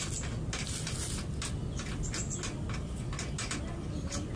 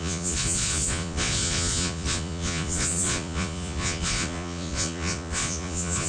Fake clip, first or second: second